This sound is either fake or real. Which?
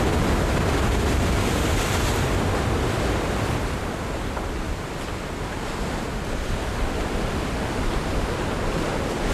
real